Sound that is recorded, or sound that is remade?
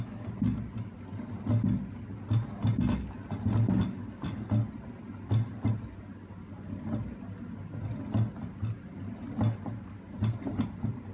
recorded